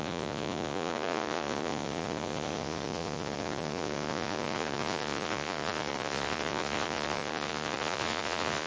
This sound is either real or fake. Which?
fake